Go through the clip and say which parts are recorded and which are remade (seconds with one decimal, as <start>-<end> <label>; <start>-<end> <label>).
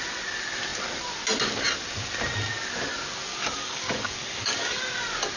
0.0-3.3 recorded; 3.3-4.8 remade; 4.8-5.4 recorded